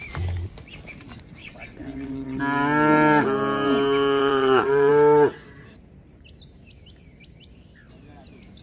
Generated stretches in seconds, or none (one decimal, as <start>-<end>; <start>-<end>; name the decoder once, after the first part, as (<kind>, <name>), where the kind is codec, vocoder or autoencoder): 1.4-2.4 (vocoder, WaveNeXt); 4.2-4.9